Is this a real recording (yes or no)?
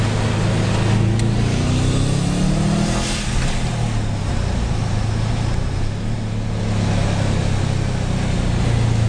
yes